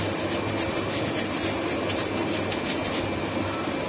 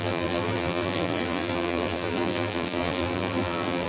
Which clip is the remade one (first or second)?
second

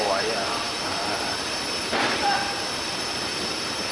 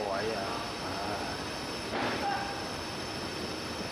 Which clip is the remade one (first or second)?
first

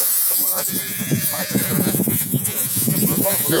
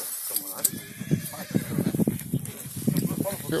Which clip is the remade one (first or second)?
first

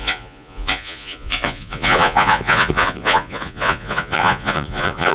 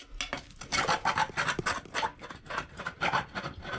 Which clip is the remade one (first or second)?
first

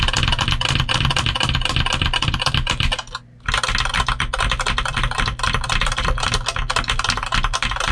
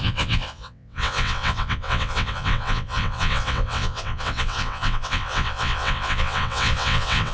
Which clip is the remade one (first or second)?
second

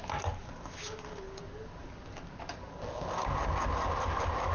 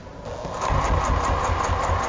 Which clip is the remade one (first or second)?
first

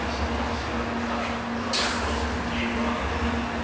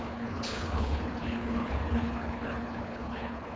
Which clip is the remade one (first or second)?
second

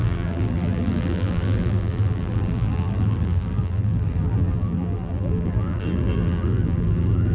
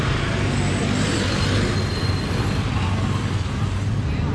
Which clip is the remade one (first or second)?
first